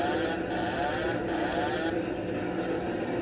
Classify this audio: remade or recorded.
recorded